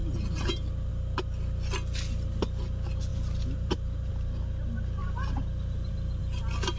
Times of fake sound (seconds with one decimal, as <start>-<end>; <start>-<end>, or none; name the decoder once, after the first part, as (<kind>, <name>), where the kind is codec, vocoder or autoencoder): 3.1-4.1 (vocoder, BigVGAN v2); 5.0-6.2